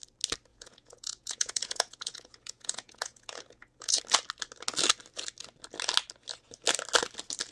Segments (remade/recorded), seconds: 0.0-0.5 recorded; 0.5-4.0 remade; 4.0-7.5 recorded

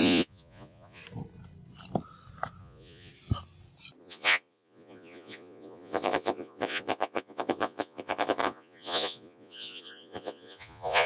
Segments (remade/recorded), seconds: 0.0-1.0 remade; 1.0-2.6 recorded; 2.6-3.1 remade; 3.1-4.0 recorded; 4.0-11.1 remade